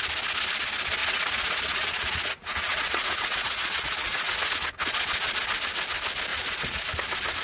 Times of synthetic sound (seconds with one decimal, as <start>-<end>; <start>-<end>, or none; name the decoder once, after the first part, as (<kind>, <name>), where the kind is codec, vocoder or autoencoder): 1.0-4.5 (vocoder, Vocos); 6.3-6.9